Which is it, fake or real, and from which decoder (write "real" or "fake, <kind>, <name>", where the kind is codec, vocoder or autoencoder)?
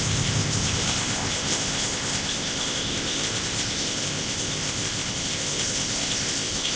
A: fake, codec, ZipCodec